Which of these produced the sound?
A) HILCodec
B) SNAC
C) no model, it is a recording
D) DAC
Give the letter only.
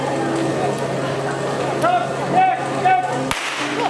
C